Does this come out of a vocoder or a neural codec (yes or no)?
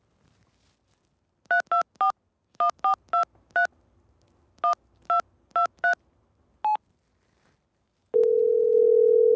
no